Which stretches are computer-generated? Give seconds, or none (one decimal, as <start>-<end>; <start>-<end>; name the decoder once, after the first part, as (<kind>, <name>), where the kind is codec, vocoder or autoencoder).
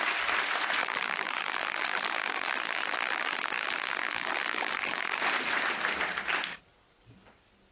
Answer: 0.8-5.2 (vocoder, BigVGAN v2)